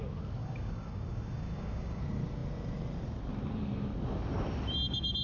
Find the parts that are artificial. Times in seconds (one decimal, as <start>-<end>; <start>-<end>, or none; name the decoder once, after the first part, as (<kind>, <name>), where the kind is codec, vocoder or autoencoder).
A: 0.4-2.0 (codec, DAC)